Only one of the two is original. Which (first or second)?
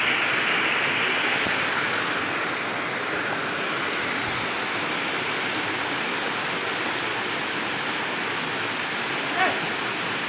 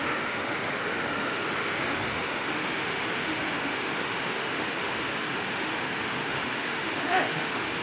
first